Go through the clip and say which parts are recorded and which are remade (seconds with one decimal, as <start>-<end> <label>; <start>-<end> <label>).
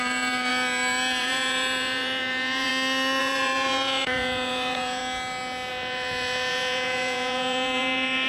0.0-0.5 remade; 0.5-1.2 recorded; 1.2-2.7 remade; 2.7-3.2 recorded; 3.2-5.0 remade; 5.0-5.7 recorded; 5.7-8.3 remade